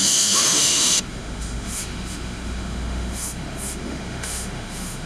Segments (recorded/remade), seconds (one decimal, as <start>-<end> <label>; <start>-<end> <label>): 0.0-5.1 remade